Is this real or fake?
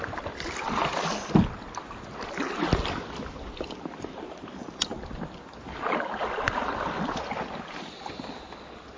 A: real